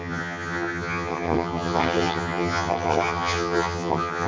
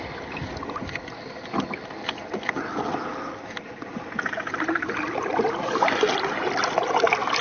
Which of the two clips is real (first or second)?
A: second